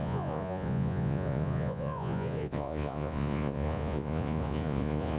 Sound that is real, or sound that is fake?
fake